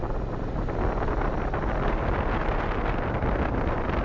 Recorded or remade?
recorded